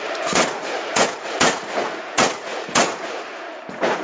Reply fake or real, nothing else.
fake